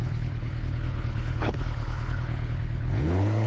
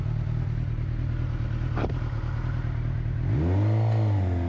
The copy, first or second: first